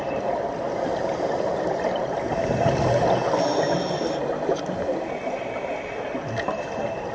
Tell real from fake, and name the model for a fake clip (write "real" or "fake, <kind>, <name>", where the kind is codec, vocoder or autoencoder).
real